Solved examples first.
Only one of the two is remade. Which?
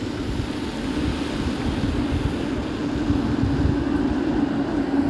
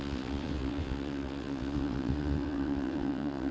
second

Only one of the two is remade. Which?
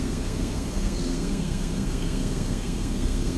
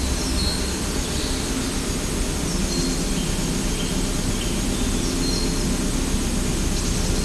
first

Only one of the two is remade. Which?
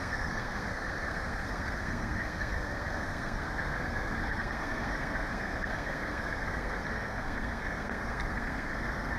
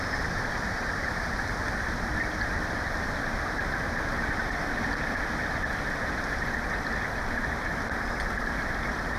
first